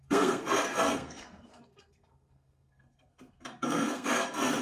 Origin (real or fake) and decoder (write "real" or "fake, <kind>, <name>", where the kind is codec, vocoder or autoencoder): fake, codec, SNAC